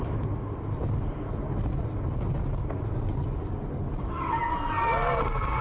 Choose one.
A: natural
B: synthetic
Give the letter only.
A